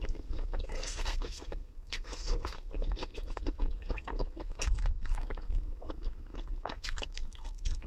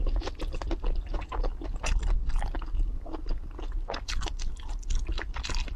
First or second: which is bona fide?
second